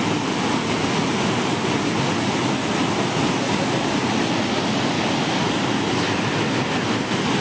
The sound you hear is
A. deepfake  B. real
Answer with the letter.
B